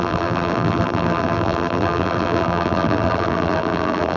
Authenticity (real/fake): fake